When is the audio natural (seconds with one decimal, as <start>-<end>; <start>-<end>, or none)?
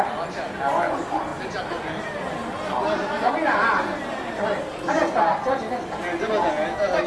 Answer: 0.0-7.1